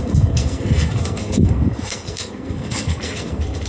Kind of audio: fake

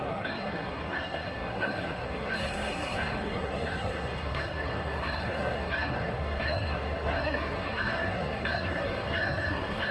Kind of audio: fake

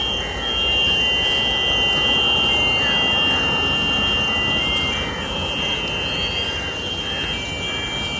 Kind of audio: real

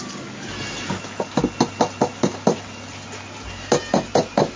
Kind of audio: real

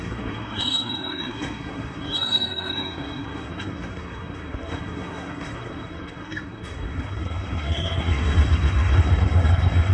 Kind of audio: fake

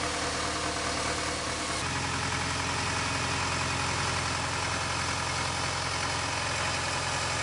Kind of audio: real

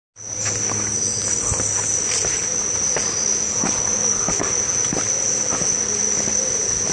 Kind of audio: real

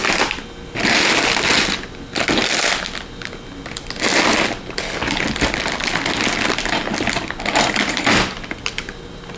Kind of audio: real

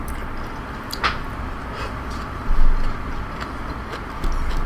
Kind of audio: real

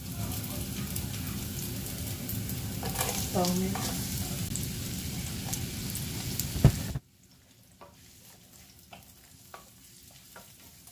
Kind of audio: real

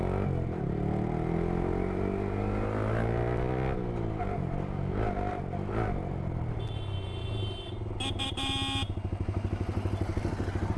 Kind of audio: real